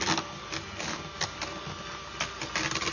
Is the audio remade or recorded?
recorded